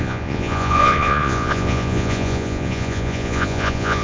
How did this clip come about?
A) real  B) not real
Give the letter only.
B